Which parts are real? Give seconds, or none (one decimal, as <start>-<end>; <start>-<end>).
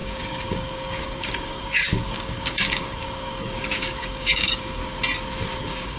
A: 4.8-5.6